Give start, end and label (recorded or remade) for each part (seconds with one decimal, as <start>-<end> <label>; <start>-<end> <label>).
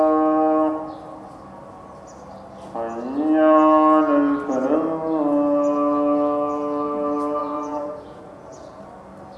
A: 0.0-7.4 recorded; 7.4-8.8 remade; 8.8-9.4 recorded